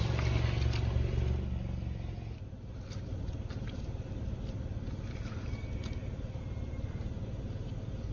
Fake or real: real